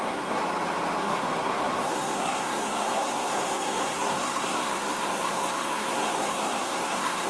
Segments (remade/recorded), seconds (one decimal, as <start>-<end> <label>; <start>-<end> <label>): 0.0-0.4 remade; 0.4-1.0 recorded; 1.0-7.3 remade